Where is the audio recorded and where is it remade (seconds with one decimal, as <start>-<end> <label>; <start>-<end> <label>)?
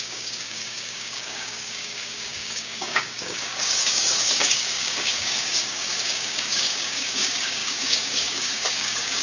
0.0-9.2 remade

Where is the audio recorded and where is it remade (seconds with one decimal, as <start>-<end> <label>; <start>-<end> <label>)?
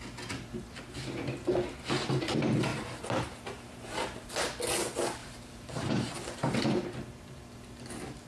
0.0-2.7 recorded; 2.7-4.3 remade; 4.3-5.2 recorded; 5.2-6.6 remade; 6.6-8.3 recorded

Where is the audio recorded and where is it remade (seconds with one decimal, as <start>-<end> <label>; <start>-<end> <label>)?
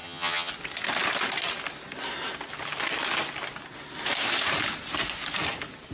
0.0-0.5 remade; 0.5-5.9 recorded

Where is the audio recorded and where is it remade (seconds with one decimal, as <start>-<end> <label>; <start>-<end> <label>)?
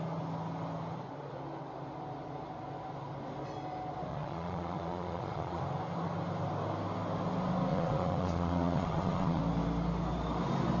0.0-4.1 recorded; 4.1-5.6 remade; 5.6-7.7 recorded; 7.7-9.4 remade; 9.4-10.8 recorded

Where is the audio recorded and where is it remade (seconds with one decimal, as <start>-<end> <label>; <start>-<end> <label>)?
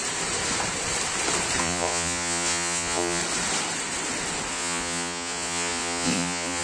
0.0-1.6 recorded; 1.6-3.2 remade; 3.2-4.5 recorded; 4.5-6.6 remade